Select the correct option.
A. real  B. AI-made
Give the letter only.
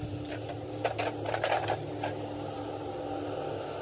A